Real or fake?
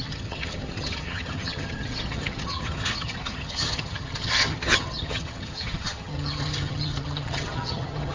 fake